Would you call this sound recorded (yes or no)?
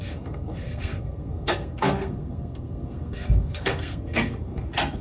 no